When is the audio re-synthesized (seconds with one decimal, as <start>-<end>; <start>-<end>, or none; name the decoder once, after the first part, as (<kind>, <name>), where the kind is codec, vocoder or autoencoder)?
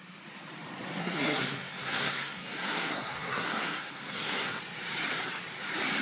1.0-4.6 (codec, SNAC)